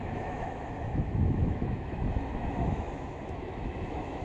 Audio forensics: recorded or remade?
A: remade